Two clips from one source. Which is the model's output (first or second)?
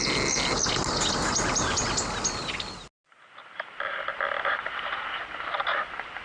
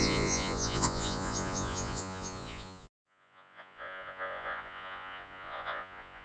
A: second